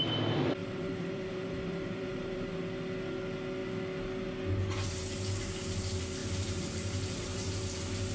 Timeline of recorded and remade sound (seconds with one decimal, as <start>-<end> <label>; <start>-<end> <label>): 0.0-0.6 recorded; 0.6-2.6 remade; 2.6-6.2 recorded; 6.2-7.6 remade; 7.6-8.1 recorded